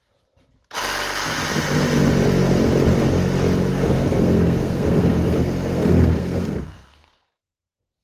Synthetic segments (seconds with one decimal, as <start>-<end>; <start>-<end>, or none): 3.7-7.4